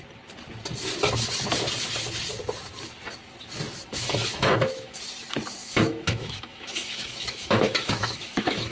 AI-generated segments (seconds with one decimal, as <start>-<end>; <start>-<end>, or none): 3.9-5.0; 5.6-8.7